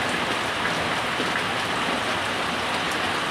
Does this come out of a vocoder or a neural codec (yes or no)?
no